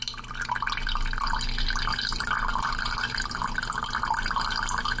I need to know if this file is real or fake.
real